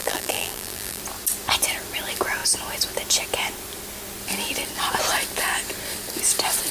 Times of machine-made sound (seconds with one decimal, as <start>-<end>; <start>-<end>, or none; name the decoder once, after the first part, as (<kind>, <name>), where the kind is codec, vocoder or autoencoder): 0.0-1.0 (vocoder, BigVGAN v2)